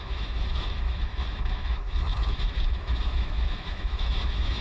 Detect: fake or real fake